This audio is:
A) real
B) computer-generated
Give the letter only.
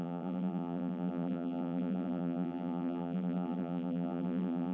B